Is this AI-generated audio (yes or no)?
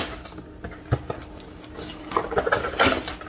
no